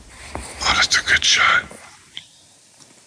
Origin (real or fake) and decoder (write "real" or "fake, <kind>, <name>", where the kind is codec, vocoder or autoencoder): fake, vocoder, BigVGAN v2